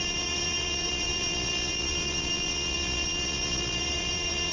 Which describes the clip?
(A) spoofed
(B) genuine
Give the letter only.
A